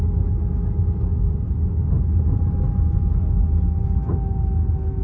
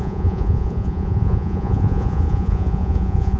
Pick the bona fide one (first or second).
first